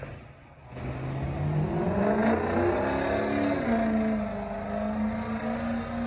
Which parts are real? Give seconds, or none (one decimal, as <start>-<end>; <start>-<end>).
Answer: 0.0-6.1